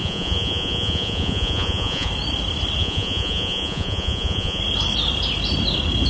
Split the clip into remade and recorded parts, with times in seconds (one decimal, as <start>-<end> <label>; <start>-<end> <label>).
0.0-2.1 remade; 2.1-2.8 recorded; 2.8-4.6 remade; 4.6-6.1 recorded